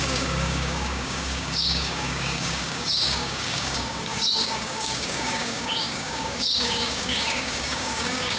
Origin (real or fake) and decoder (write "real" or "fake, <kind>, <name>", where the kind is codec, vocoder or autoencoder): fake, codec, DAC